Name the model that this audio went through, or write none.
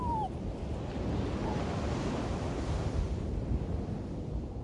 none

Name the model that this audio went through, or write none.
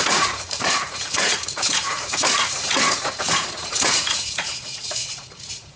vocoder, Vocos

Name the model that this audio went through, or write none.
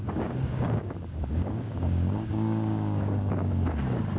codec, DAC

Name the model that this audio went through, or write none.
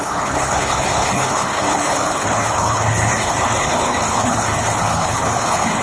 codec, HILCodec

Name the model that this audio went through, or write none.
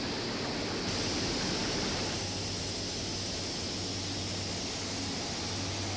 none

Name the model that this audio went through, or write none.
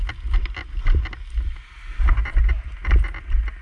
none